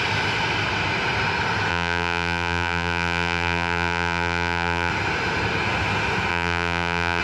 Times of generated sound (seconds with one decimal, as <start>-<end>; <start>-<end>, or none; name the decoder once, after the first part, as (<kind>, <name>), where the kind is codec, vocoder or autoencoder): 1.7-4.9 (vocoder, BigVGAN v2); 6.3-7.2